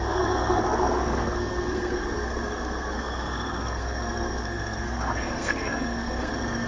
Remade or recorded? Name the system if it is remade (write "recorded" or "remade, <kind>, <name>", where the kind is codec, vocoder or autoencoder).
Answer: remade, codec, SNAC